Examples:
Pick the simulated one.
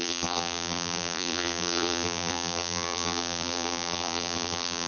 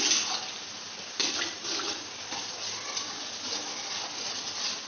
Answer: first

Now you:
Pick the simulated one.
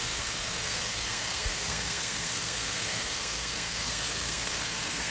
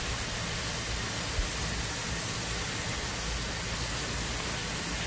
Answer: first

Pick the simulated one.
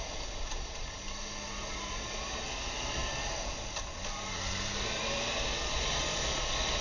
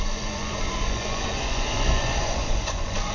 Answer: second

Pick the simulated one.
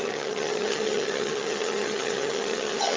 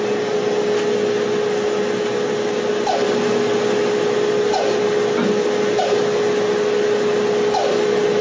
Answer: first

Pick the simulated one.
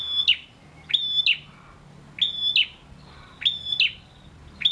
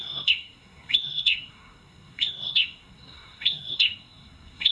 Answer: second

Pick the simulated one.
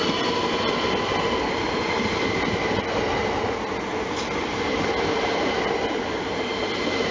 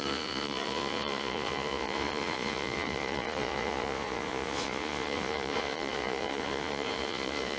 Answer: second